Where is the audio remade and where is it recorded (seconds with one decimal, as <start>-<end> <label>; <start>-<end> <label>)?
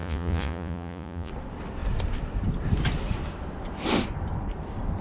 0.0-1.3 remade; 1.3-5.0 recorded